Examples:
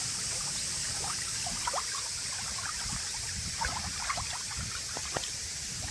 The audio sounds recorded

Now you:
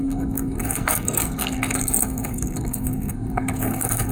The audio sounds remade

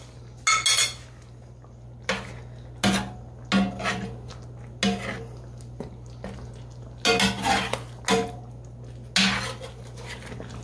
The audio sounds recorded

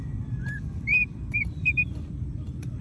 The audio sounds remade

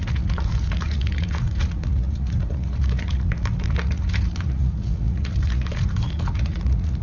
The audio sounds remade